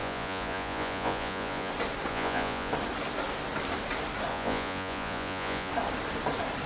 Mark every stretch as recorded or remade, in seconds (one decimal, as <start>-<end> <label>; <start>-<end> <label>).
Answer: 0.0-1.7 remade; 1.7-2.1 recorded; 2.1-2.7 remade; 2.7-4.3 recorded; 4.3-5.7 remade; 5.7-6.7 recorded